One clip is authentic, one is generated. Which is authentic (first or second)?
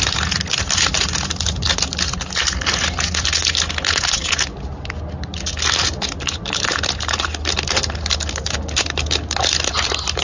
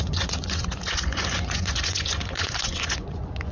first